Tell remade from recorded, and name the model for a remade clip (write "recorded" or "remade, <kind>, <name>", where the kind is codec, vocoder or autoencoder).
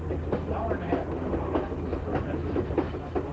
recorded